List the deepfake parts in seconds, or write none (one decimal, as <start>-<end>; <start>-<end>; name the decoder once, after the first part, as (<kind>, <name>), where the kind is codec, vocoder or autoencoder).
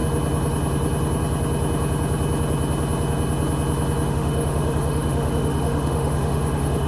4.1-6.9 (autoencoder, DAC-VAE)